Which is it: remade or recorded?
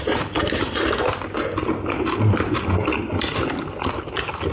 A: recorded